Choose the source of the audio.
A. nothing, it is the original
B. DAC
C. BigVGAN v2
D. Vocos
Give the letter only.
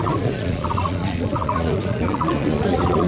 D